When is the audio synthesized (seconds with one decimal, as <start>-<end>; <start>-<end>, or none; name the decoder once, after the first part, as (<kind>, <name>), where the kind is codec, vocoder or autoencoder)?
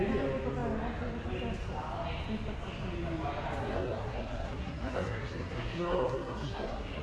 3.6-7.0 (codec, SNAC)